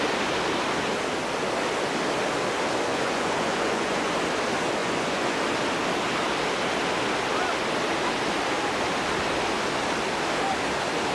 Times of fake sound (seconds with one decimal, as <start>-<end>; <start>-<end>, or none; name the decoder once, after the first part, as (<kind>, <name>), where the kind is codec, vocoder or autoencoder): 2.9-4.1 (vocoder, Vocos); 4.8-5.4